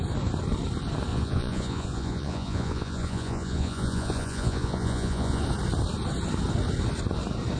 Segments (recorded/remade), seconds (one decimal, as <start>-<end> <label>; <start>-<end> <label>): 0.0-1.1 recorded; 1.1-5.4 remade; 5.4-7.6 recorded